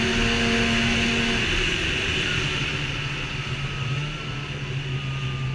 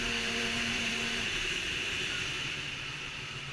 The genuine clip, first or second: first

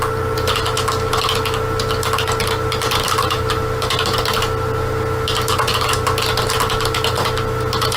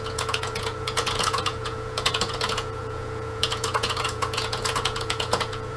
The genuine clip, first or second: first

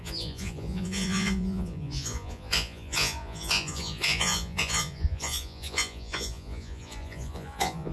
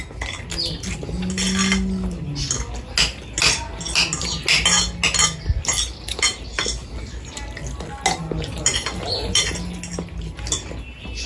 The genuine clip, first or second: second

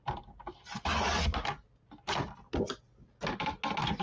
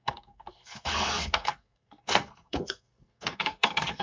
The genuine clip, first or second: first